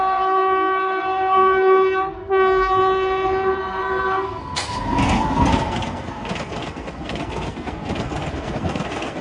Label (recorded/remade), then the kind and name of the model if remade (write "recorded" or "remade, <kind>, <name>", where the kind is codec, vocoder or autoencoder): remade, codec, SNAC